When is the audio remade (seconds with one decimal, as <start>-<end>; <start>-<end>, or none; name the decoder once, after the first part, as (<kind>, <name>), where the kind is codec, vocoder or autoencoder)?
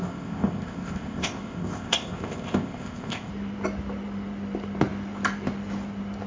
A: 0.0-3.3 (codec, ZipCodec)